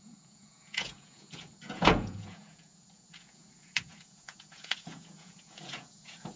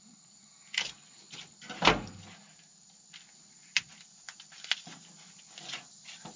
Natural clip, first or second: second